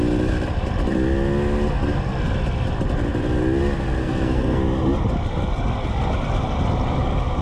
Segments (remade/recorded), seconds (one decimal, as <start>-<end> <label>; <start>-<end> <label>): 0.0-4.0 recorded; 4.0-4.6 remade; 4.6-7.4 recorded